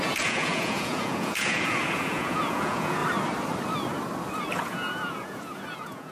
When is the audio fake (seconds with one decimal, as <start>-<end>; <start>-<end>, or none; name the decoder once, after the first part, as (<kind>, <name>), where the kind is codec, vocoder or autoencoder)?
0.0-3.0 (vocoder, Vocos); 4.5-6.1